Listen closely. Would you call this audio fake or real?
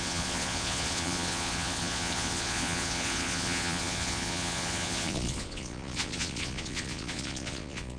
fake